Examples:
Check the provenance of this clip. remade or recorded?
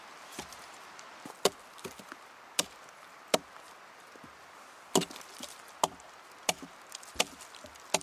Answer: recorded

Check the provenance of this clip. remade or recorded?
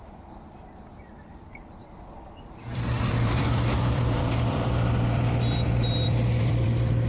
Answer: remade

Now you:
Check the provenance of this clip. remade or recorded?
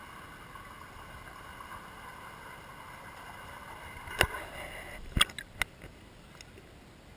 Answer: recorded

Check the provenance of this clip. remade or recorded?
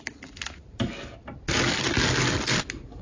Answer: recorded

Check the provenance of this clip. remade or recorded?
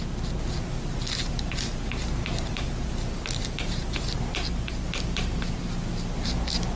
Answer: recorded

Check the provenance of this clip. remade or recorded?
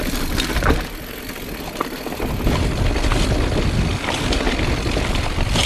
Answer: recorded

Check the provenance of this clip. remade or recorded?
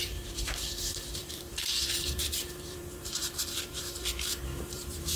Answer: remade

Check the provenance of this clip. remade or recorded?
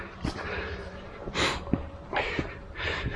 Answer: remade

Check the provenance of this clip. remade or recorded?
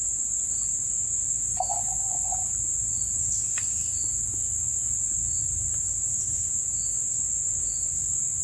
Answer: recorded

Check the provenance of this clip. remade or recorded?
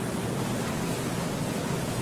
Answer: recorded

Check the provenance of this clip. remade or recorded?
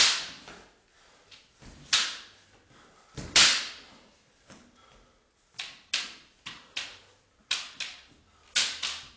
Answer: recorded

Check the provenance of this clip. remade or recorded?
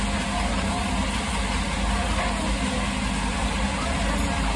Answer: recorded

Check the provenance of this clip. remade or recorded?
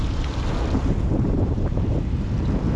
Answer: remade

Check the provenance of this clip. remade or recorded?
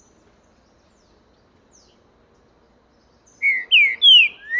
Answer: recorded